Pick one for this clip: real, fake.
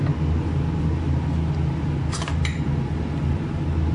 real